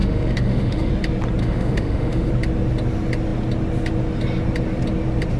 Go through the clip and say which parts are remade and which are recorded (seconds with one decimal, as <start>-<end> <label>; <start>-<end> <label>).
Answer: 0.0-0.9 remade; 0.9-1.4 recorded; 1.4-2.3 remade; 2.3-5.4 recorded